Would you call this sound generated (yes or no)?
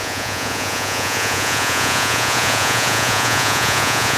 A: yes